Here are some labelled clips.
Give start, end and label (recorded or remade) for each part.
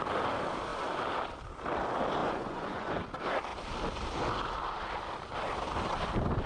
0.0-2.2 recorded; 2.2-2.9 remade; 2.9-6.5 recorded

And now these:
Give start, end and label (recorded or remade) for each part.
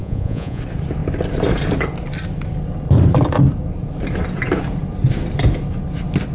0.0-0.6 remade; 0.6-6.3 recorded